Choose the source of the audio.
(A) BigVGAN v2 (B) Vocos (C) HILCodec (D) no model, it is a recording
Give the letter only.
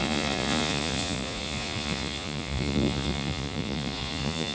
B